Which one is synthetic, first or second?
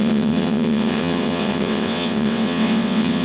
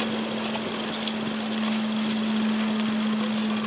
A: first